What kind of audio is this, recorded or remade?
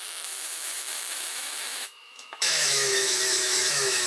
remade